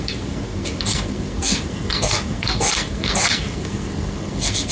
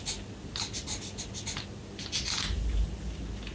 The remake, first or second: first